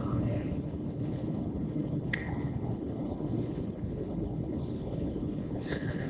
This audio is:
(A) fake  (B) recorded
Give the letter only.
A